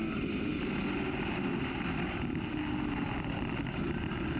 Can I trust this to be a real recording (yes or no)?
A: yes